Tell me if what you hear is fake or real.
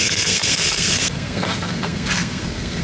fake